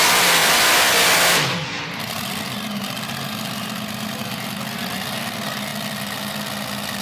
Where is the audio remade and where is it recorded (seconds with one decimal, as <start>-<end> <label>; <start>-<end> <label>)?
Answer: 0.0-7.0 recorded